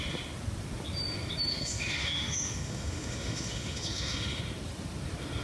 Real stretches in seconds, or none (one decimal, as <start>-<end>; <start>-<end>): 0.0-1.5; 4.4-5.4

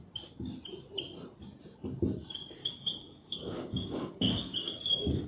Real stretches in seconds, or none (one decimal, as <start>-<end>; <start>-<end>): 0.0-2.6